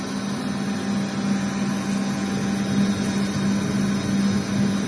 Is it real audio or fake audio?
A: real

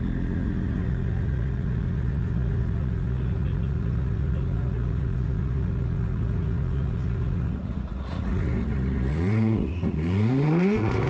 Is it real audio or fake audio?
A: fake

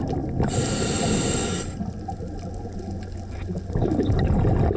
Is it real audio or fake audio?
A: real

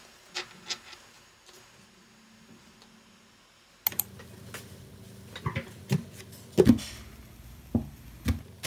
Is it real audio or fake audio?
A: real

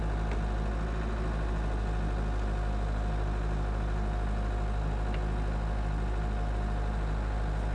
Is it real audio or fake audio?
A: real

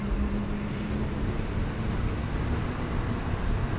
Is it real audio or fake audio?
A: real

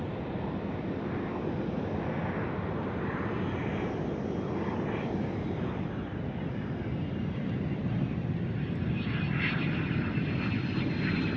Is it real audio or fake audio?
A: real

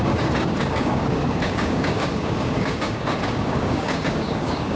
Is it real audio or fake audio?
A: fake